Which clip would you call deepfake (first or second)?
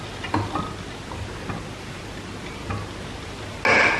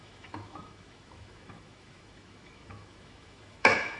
second